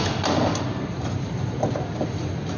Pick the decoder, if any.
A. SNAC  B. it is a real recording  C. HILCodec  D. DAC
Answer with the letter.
B